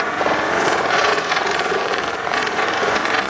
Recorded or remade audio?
remade